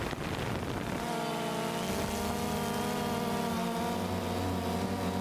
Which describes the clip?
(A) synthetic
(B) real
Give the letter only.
B